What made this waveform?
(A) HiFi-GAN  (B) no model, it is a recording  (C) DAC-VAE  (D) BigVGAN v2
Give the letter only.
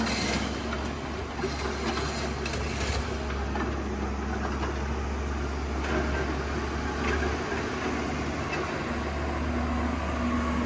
B